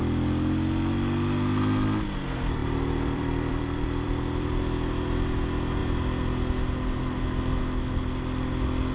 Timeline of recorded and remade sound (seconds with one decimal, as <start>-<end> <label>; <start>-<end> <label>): 0.0-2.6 recorded; 2.6-4.6 remade; 4.6-8.9 recorded